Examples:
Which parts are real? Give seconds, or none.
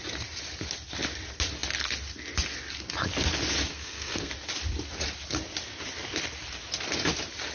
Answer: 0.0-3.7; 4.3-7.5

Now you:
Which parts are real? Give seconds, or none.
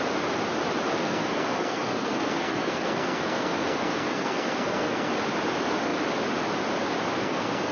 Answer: 0.0-1.0; 5.1-7.2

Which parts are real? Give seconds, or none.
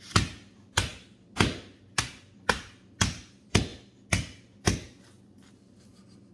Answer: 0.0-6.3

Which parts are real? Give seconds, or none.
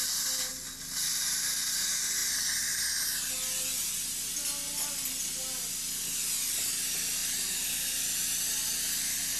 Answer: 0.0-9.4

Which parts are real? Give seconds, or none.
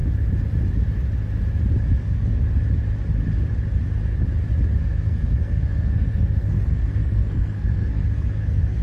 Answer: 0.0-1.9; 2.4-4.8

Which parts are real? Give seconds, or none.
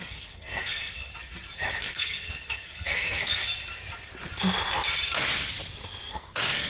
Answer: 1.1-1.8; 3.4-6.1